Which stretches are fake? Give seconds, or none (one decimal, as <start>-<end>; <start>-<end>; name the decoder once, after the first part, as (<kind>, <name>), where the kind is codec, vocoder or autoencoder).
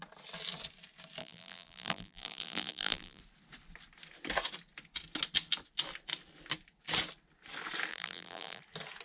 1.2-3.2 (vocoder, BigVGAN v2); 7.9-8.6